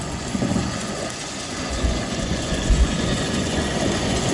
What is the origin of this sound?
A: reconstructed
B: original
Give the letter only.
A